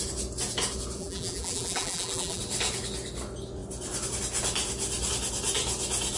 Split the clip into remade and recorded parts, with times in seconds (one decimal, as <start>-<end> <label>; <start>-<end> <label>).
0.0-1.0 recorded; 1.0-2.4 remade; 2.4-6.2 recorded